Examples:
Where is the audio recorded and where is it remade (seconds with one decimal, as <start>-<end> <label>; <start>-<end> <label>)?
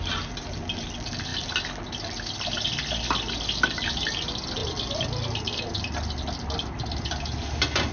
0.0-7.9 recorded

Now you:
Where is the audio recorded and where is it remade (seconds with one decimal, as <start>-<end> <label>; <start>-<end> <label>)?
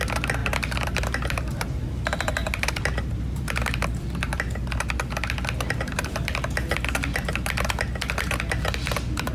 0.0-0.4 recorded; 0.4-4.5 remade; 4.5-9.3 recorded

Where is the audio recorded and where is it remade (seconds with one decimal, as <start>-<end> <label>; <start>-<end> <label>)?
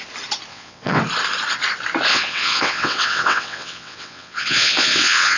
0.0-0.5 recorded; 0.5-1.0 remade; 1.0-2.1 recorded; 2.1-5.4 remade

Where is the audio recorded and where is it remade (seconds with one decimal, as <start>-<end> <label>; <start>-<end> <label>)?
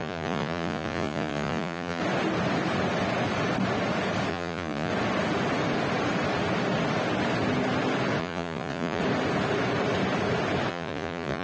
0.0-2.0 remade; 2.0-4.3 recorded; 4.3-4.9 remade; 4.9-8.2 recorded; 8.2-9.0 remade; 9.0-10.7 recorded; 10.7-11.4 remade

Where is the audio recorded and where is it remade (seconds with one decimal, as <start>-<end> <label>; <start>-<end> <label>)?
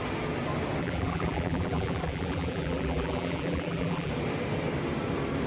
0.0-0.8 recorded; 0.8-4.1 remade; 4.1-5.5 recorded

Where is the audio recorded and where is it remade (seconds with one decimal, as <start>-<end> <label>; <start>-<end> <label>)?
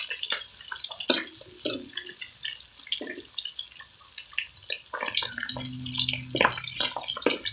0.0-7.5 recorded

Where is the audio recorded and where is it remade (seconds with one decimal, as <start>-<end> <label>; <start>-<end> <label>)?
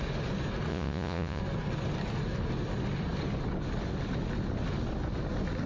0.0-0.7 recorded; 0.7-1.4 remade; 1.4-5.7 recorded